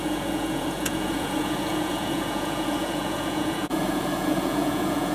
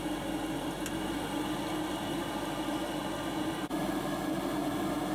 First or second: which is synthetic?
first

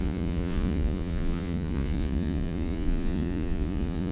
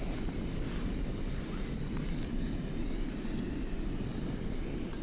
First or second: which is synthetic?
first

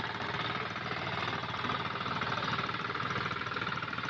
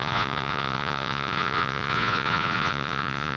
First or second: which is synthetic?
second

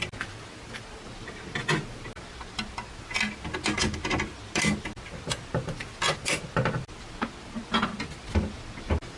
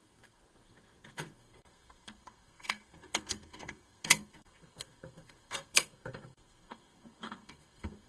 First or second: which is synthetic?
second